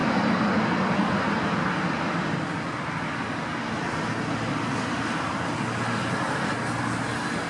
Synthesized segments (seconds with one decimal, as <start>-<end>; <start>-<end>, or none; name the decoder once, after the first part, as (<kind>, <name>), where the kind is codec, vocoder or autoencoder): none